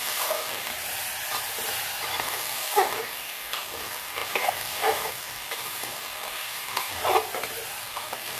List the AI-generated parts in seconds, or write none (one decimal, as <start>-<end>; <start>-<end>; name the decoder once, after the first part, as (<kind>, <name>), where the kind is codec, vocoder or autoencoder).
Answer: 0.0-0.7 (codec, DAC); 2.2-7.0; 7.8-8.4